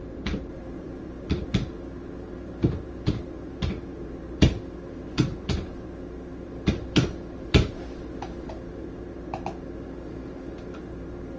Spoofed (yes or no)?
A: yes